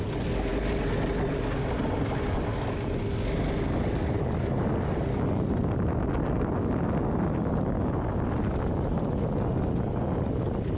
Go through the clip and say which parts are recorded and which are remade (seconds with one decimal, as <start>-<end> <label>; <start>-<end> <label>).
0.0-10.8 recorded